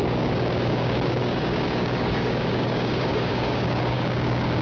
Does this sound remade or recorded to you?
remade